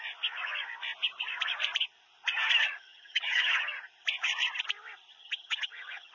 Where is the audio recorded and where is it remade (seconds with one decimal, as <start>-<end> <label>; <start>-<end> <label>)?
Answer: 0.0-2.6 recorded; 2.6-3.6 remade; 3.6-5.2 recorded; 5.2-6.1 remade

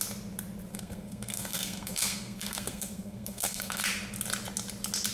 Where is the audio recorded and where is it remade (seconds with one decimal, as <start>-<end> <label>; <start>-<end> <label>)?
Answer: 0.0-0.7 recorded; 0.7-3.8 remade; 3.8-5.1 recorded